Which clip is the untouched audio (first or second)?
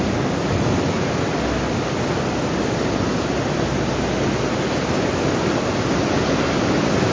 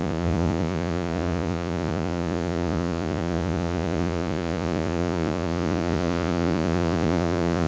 first